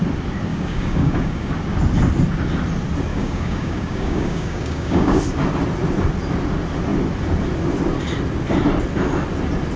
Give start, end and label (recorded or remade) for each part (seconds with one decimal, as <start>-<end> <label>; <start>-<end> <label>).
0.0-0.5 recorded; 0.5-1.5 remade; 1.5-3.1 recorded; 3.1-5.2 remade; 5.2-9.8 recorded